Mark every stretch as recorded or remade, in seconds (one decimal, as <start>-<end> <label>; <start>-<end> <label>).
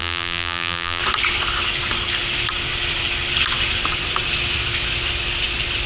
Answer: 0.0-1.0 remade; 1.0-5.9 recorded